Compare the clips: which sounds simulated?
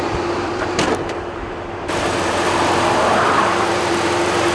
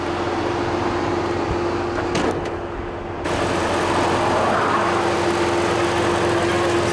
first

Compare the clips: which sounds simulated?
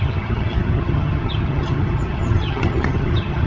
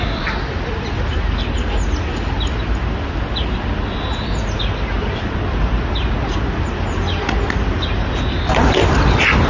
first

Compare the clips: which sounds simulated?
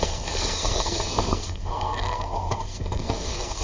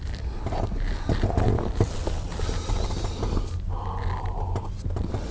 first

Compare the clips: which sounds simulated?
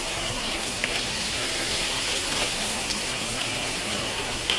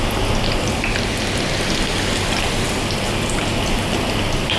first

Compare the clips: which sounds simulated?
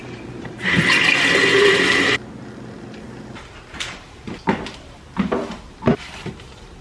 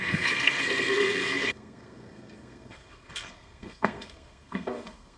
second